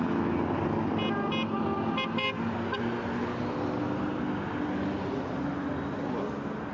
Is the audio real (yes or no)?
yes